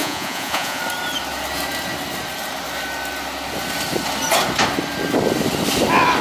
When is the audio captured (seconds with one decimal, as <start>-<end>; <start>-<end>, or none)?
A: 0.8-6.2